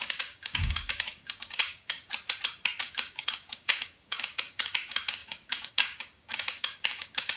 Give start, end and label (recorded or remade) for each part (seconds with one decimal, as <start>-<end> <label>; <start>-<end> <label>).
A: 0.0-2.1 remade; 2.1-2.8 recorded; 2.8-7.4 remade